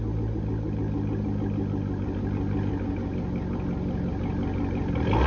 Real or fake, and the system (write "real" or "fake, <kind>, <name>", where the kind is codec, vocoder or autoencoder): real